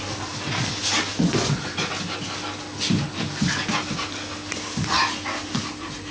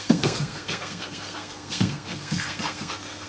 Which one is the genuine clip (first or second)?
first